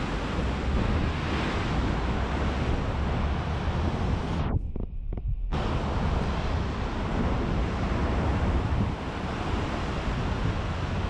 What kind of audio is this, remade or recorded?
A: recorded